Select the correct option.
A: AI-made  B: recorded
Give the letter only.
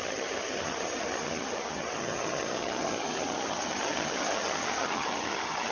A